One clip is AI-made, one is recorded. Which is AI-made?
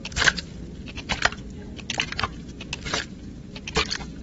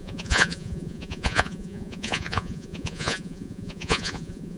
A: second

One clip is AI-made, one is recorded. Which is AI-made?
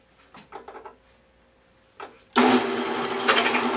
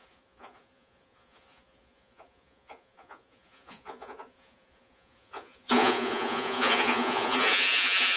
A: second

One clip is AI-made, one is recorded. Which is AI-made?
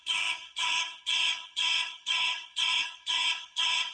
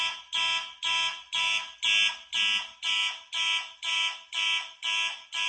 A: first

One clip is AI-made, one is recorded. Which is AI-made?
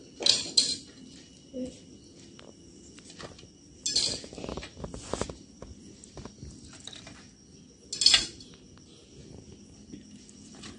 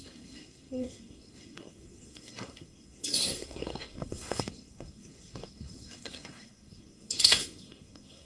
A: second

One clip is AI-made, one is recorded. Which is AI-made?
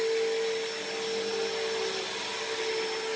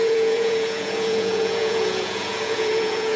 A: second